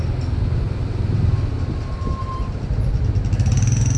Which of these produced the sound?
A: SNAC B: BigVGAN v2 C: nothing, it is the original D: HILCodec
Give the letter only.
C